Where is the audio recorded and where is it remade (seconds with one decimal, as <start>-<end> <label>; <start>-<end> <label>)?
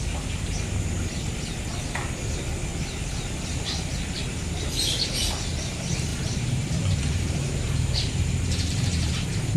0.0-6.1 recorded; 6.1-9.1 remade; 9.1-9.6 recorded